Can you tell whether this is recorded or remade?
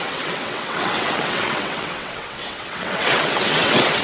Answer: remade